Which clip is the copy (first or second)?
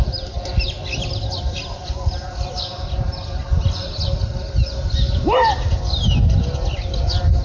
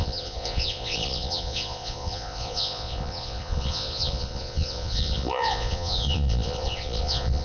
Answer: second